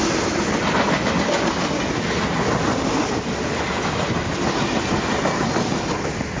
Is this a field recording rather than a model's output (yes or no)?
yes